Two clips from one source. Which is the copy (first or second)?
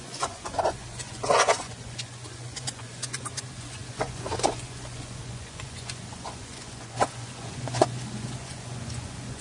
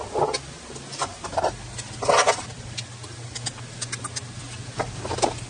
first